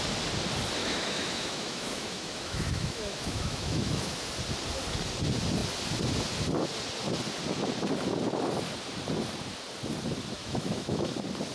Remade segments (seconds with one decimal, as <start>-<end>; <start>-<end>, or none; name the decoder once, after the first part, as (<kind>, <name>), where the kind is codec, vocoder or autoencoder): 0.8-4.3 (autoencoder, DAC-VAE); 10.4-11.1